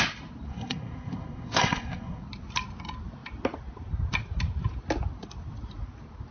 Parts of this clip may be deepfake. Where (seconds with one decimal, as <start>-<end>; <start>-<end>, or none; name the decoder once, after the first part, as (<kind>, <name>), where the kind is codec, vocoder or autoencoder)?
0.5-2.2 (codec, SNAC)